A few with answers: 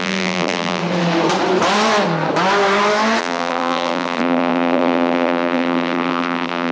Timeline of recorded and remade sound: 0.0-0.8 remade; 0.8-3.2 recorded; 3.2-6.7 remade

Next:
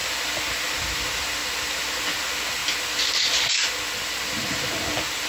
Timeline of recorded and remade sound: 0.0-5.3 recorded